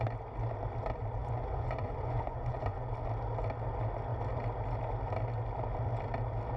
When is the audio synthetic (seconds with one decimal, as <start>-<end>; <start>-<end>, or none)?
1.2-2.9

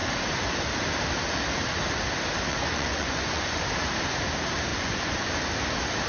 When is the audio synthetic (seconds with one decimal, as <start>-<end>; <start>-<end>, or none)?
2.5-3.6; 4.7-5.3

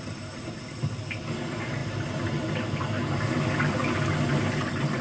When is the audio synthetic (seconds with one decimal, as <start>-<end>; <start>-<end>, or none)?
none

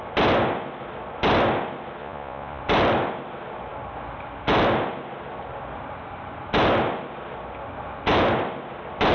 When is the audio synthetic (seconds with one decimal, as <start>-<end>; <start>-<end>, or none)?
2.0-2.6

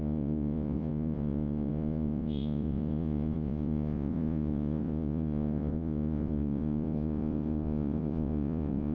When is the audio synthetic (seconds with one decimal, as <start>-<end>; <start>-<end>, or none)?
0.0-8.9

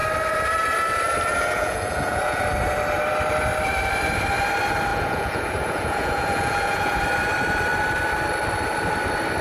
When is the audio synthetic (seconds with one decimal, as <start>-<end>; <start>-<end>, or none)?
1.3-2.4; 4.9-7.0

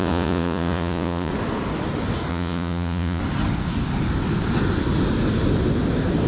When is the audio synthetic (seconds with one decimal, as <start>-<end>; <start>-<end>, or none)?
0.0-1.3; 2.3-3.2